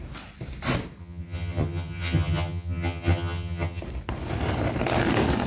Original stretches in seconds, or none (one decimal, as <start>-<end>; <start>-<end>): 0.0-1.0; 3.8-5.5